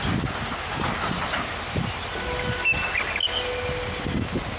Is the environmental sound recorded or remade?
recorded